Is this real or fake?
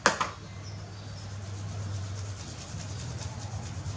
real